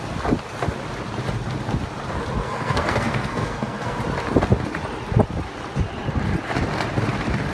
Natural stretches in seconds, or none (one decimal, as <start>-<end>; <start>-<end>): 0.0-2.4; 4.0-7.5

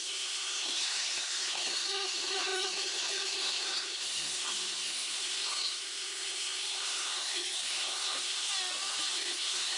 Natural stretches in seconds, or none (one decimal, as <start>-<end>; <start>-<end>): 8.5-9.1

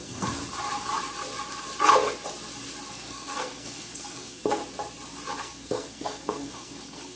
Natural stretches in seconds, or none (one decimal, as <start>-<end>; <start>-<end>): 0.4-2.9; 4.6-5.4